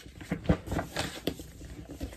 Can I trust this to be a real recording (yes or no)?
no